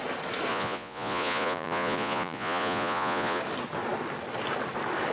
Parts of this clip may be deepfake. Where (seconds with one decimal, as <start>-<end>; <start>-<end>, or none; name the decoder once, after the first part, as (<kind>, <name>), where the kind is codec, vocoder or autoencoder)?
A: 0.5-3.4 (vocoder, Vocos)